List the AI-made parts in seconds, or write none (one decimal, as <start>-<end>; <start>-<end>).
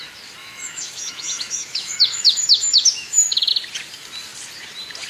0.4-3.5